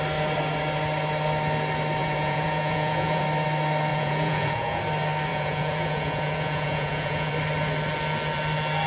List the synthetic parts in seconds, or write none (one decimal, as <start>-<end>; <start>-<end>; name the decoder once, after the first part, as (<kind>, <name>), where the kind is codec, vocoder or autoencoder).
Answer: 2.0-3.2 (vocoder, Vocos); 3.9-4.8; 5.3-7.3